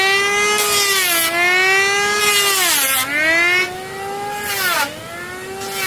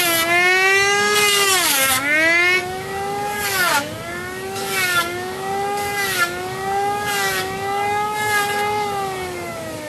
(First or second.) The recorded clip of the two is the first